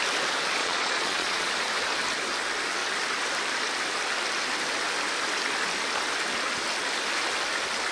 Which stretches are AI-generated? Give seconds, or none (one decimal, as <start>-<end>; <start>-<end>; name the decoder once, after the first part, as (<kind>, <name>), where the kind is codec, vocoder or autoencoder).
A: 0.6-1.5 (vocoder, Vocos)